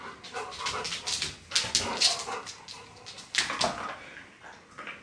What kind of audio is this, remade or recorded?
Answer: recorded